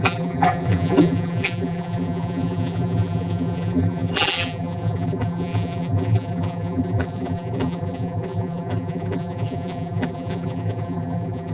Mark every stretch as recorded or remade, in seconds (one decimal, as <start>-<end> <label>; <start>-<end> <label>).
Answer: 0.0-11.5 remade